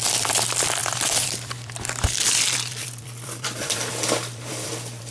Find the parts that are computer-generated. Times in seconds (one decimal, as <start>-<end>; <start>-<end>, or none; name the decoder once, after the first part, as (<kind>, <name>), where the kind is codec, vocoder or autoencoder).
0.0-5.1 (vocoder, BigVGAN v2)